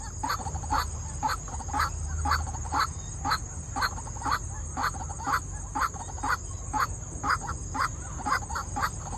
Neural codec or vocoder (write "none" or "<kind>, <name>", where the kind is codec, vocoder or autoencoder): none